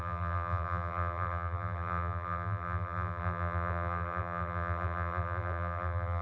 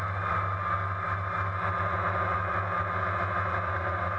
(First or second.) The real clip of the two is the second